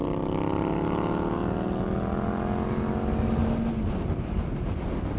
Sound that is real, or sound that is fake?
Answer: real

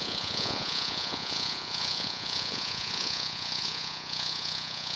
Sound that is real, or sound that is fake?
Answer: fake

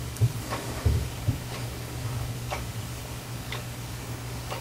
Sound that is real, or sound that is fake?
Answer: fake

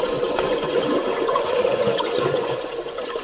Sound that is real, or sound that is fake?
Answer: fake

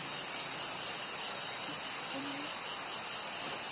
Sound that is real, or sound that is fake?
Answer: real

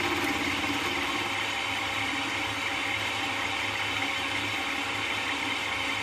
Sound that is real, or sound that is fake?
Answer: real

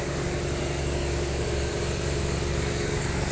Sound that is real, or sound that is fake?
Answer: fake